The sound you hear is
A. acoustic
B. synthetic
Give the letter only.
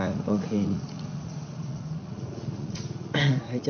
B